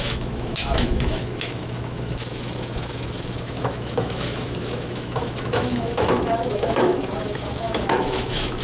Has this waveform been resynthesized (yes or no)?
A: yes